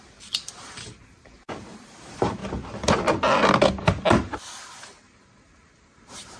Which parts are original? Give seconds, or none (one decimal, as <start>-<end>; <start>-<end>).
2.4-4.8